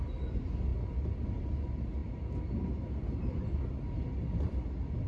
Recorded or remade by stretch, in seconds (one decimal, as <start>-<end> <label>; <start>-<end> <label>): 0.0-5.1 recorded